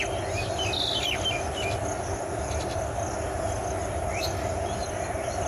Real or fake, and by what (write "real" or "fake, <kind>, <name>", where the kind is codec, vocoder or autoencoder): real